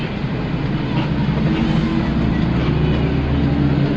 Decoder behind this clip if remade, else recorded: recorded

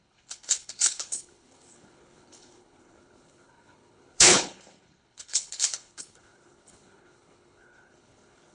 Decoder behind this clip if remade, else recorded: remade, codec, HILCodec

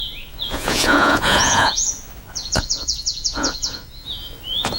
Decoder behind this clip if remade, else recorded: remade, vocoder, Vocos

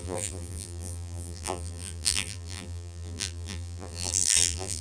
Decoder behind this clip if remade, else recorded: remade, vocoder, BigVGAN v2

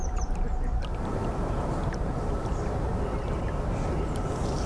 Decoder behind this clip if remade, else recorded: remade, vocoder, BigVGAN v2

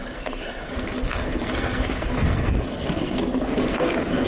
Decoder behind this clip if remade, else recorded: remade, codec, SNAC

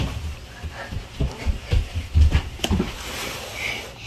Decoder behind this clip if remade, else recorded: recorded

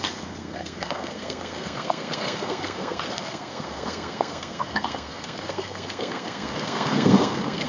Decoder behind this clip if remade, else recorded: remade, codec, SNAC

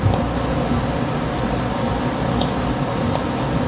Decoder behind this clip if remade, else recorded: recorded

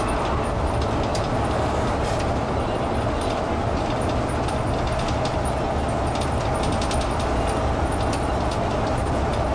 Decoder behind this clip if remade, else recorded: recorded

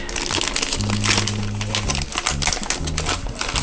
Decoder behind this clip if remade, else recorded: recorded